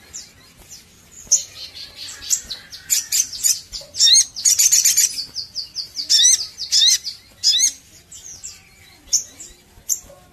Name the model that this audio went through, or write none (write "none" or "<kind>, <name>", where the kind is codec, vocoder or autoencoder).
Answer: none